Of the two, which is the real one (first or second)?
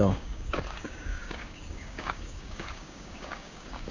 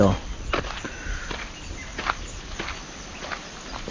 second